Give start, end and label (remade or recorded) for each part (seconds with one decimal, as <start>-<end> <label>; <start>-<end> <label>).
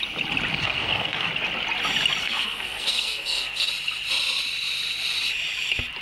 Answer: 0.0-0.5 recorded; 0.5-1.3 remade; 1.3-2.2 recorded; 2.2-3.7 remade; 3.7-6.0 recorded